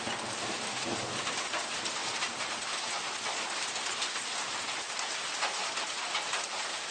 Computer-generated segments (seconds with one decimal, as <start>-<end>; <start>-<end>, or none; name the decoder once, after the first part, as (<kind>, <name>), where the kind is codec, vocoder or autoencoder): none